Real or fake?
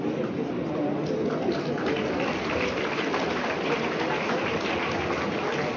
real